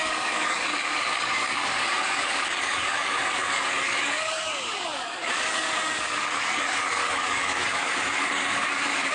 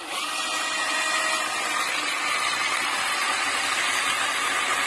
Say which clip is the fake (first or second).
first